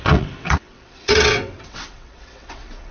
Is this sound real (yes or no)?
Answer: no